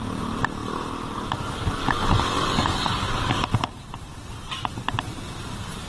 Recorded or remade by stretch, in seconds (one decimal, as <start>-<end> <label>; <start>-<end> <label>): 0.0-5.9 recorded